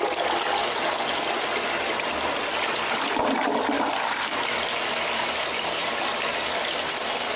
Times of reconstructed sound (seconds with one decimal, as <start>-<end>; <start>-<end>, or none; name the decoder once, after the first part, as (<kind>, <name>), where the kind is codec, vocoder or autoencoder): none